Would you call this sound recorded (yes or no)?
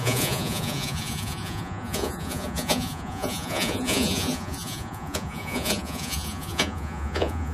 no